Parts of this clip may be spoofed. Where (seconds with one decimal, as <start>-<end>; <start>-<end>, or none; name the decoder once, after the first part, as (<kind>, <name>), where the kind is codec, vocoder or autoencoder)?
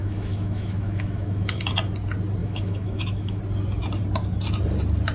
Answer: 0.0-1.7 (autoencoder, DAC-VAE); 2.4-3.4